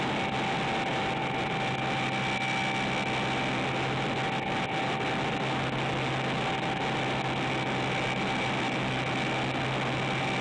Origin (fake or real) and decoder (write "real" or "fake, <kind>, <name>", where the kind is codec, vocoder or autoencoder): real